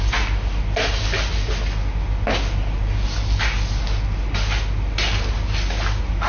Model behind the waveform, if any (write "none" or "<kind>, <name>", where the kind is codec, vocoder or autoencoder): none